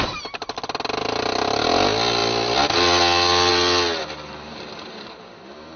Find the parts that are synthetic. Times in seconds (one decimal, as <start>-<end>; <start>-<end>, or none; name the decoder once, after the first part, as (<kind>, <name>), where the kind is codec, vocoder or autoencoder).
4.0-5.8 (vocoder, BigVGAN v2)